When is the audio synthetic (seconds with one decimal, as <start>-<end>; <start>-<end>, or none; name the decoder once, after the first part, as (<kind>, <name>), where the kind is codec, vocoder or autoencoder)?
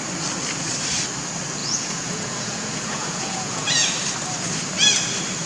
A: 1.6-3.9 (vocoder, Vocos)